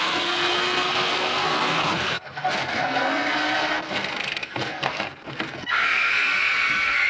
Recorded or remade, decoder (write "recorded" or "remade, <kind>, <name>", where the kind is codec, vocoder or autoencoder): remade, codec, SNAC